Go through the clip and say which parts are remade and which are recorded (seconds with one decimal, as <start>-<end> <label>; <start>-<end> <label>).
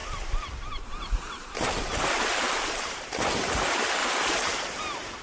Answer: 0.0-3.1 remade; 3.1-4.0 recorded; 4.0-5.2 remade